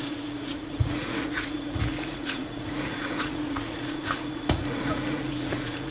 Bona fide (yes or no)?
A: no